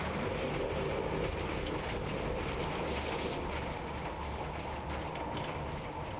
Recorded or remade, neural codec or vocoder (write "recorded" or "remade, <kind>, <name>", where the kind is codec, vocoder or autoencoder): recorded